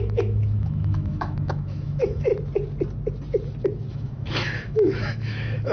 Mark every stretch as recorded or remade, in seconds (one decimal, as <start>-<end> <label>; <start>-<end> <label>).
0.0-2.3 remade; 2.3-3.9 recorded; 3.9-5.7 remade